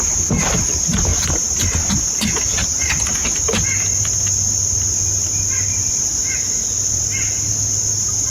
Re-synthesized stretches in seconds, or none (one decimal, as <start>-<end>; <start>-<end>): none